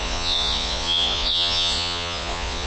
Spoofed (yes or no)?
yes